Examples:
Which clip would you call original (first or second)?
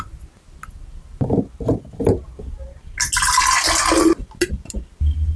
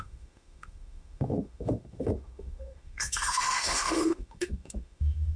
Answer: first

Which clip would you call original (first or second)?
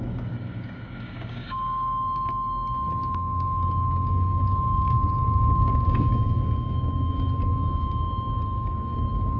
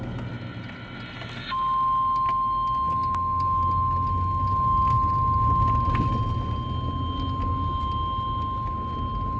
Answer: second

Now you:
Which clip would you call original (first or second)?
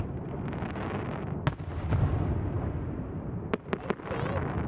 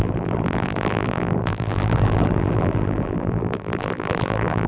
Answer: first